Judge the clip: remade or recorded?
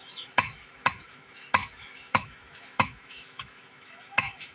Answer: remade